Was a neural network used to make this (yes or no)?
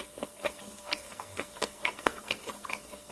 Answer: yes